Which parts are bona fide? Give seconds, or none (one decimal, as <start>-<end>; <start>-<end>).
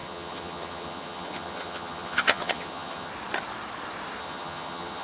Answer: 3.1-4.2